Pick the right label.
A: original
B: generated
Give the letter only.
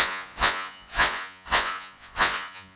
B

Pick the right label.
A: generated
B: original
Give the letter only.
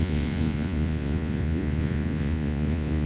A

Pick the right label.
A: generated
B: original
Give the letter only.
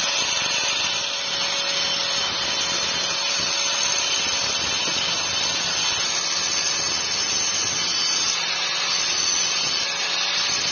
B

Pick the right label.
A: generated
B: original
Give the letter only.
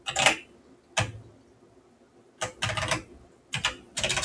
B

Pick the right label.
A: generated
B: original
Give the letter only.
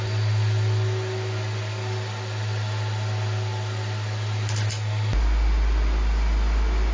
B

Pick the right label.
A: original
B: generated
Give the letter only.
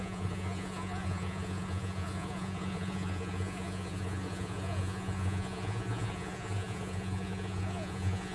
B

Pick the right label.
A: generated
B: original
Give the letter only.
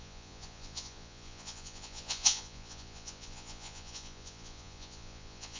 A